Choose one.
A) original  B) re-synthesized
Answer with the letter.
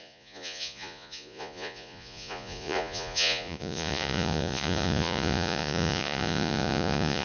B